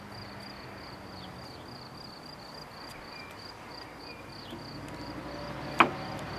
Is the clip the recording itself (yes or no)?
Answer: yes